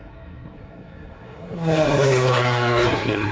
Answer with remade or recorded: remade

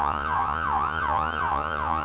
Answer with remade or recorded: remade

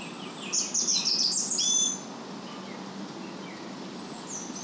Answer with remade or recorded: recorded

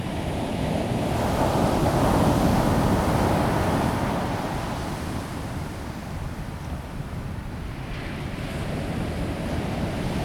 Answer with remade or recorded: recorded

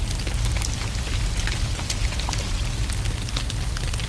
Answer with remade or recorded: recorded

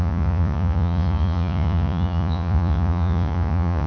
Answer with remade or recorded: remade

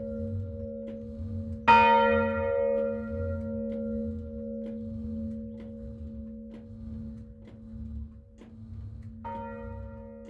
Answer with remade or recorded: recorded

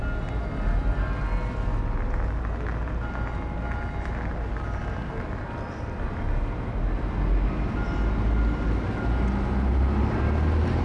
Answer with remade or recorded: recorded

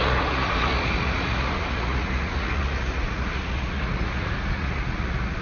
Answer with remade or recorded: remade